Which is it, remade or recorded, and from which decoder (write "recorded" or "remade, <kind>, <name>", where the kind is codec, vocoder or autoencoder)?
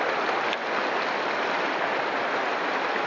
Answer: recorded